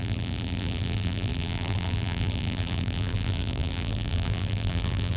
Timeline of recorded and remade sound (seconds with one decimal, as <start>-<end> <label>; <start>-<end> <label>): 0.0-5.2 remade